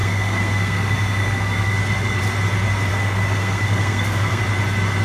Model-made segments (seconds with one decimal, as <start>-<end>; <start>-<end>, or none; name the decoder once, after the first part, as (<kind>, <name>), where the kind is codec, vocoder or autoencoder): 0.0-2.2 (codec, SNAC); 2.9-4.4